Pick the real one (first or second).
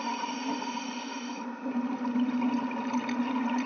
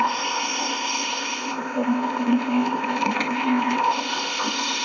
first